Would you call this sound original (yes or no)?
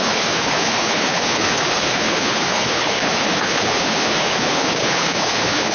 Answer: no